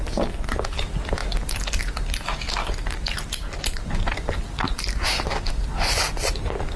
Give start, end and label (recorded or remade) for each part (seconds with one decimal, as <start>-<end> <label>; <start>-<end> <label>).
0.0-6.8 recorded